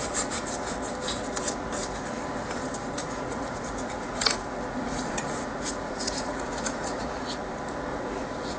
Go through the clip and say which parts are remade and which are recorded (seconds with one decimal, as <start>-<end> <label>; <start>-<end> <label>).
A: 0.0-3.0 recorded; 3.0-7.4 remade; 7.4-7.9 recorded; 7.9-8.6 remade